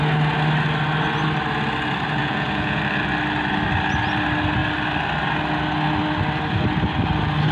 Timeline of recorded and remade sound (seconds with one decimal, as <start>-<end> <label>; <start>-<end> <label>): 0.0-2.2 recorded; 2.2-2.8 remade; 2.8-7.5 recorded